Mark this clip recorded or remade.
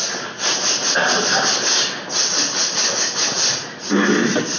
recorded